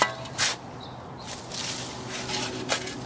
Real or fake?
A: real